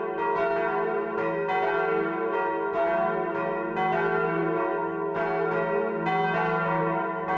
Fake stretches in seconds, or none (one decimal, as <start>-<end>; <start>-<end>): none